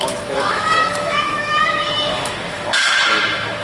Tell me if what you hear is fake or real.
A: fake